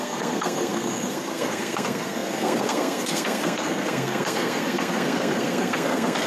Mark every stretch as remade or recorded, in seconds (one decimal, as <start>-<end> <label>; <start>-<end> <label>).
0.0-6.3 remade